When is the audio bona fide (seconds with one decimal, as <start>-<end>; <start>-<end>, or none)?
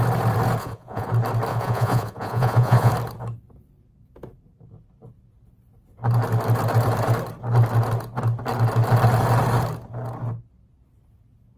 0.0-0.6; 1.1-1.5; 2.9-11.6